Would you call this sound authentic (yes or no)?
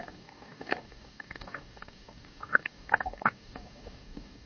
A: no